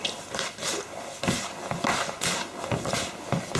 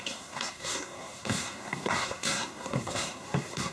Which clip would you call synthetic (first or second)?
second